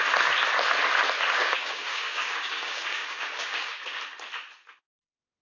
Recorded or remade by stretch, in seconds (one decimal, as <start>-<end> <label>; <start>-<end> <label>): 0.0-1.4 recorded; 1.4-4.0 remade; 4.0-5.4 recorded